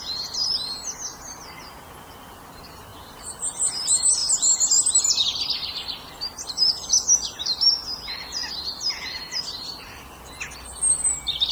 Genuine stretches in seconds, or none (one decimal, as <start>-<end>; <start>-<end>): 0.0-11.5